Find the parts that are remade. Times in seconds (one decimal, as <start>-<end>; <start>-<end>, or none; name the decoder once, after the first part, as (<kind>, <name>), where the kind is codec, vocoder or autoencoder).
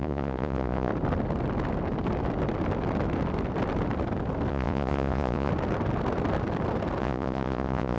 0.0-0.9 (vocoder, Vocos); 4.5-5.5; 7.0-8.0